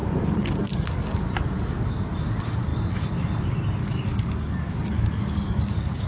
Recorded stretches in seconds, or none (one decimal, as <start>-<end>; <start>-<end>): 1.2-3.8